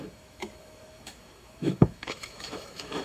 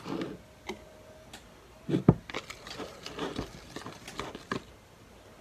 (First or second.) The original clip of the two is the second